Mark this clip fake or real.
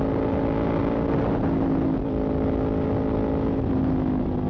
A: real